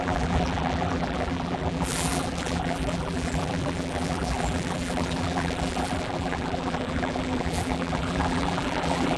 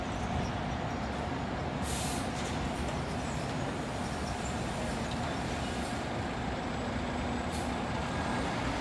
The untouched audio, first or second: second